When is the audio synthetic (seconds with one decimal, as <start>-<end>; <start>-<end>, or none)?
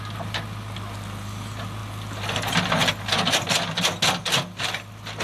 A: none